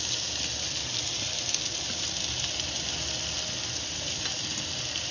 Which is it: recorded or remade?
recorded